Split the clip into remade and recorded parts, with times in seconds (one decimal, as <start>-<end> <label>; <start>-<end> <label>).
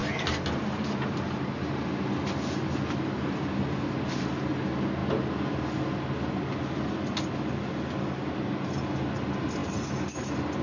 0.0-10.6 recorded